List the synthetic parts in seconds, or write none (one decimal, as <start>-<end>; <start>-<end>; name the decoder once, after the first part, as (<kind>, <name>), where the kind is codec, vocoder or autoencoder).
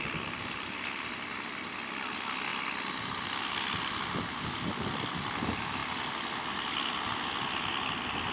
none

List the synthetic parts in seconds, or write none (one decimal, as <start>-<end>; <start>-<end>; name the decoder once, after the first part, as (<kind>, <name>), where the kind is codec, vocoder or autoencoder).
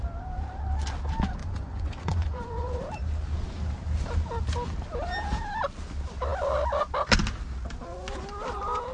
1.4-2.8 (vocoder, Vocos)